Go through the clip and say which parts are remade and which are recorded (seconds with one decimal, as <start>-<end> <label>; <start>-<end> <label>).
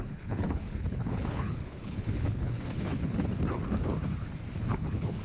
0.0-3.3 remade; 3.3-4.6 recorded; 4.6-5.2 remade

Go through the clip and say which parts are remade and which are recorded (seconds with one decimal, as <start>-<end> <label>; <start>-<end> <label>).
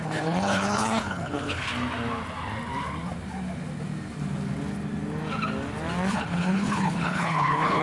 0.0-1.7 remade; 1.7-6.1 recorded; 6.1-7.8 remade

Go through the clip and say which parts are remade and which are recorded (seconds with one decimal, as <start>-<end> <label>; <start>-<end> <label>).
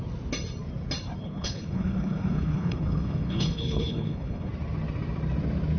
0.0-1.2 recorded; 1.2-4.5 remade; 4.5-5.8 recorded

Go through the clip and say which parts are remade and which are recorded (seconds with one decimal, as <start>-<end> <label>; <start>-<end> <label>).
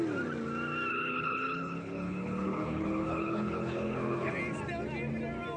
0.0-0.9 recorded; 0.9-4.3 remade; 4.3-5.6 recorded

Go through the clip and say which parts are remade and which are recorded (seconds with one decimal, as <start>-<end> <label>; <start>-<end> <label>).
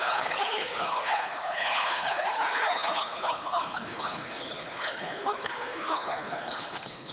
0.0-7.1 remade